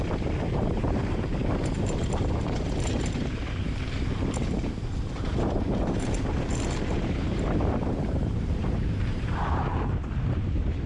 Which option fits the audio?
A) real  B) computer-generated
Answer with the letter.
B